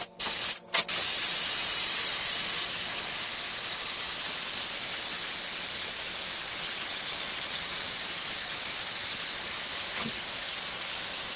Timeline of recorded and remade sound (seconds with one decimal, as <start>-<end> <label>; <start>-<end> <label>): 0.0-6.6 recorded; 6.6-7.9 remade; 7.9-11.4 recorded